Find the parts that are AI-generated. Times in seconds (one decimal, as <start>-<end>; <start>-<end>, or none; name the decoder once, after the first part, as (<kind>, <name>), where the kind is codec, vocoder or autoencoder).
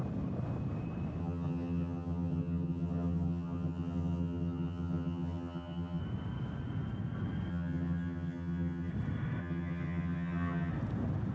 1.2-6.0 (vocoder, HiFi-GAN); 7.5-8.9; 9.4-10.7